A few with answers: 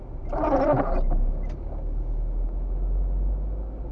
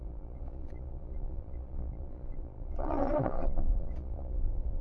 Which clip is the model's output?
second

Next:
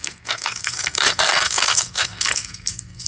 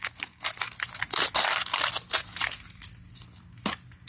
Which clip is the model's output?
first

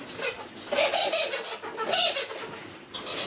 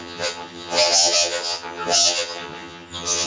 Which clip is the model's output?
second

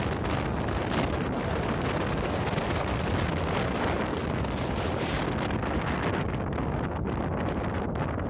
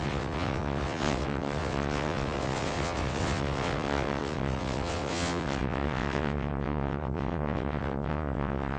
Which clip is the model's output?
second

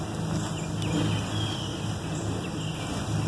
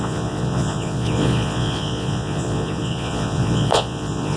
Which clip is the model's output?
second